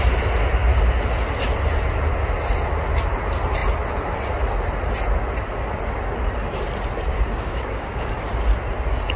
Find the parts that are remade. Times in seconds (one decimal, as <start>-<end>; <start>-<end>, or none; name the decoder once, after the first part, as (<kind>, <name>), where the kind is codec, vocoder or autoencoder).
7.1-8.1 (codec, DAC)